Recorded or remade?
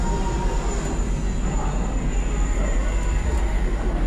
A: recorded